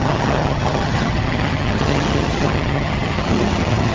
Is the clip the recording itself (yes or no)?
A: no